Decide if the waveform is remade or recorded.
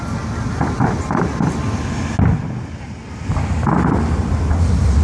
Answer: recorded